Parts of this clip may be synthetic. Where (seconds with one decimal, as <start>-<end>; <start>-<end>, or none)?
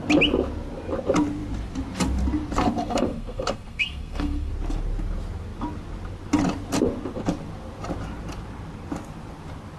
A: 2.8-4.5